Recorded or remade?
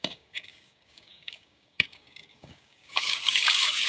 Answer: remade